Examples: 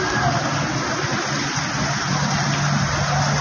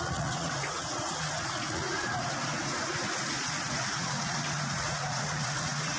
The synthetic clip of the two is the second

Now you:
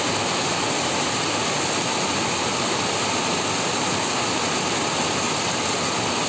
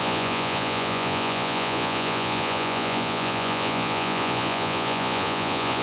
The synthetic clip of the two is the second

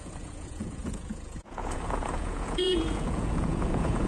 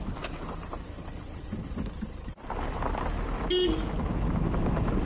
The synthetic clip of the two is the first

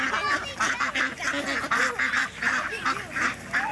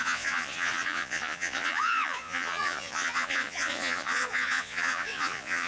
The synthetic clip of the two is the second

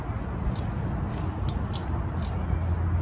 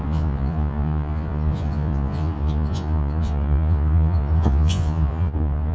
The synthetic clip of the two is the second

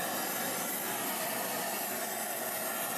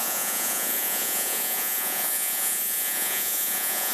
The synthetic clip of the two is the second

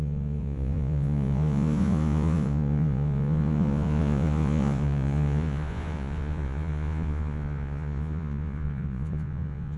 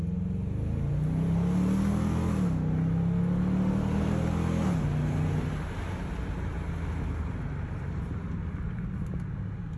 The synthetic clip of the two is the first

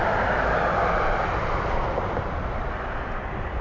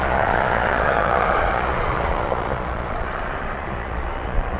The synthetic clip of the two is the second